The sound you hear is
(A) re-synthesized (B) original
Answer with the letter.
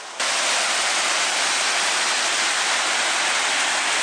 B